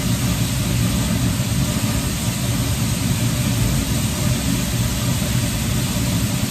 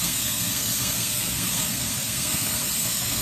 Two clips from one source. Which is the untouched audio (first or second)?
first